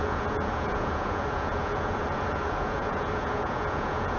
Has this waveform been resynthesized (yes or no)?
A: yes